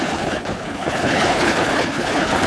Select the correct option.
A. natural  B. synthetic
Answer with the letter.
B